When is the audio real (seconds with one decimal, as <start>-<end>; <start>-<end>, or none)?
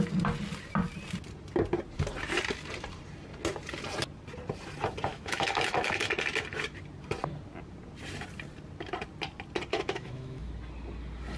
0.0-5.1; 6.1-9.7; 10.5-11.4